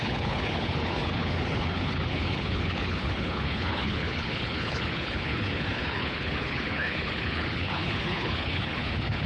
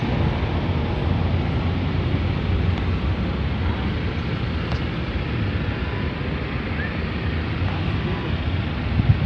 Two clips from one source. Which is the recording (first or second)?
second